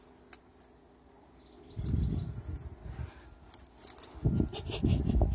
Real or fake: real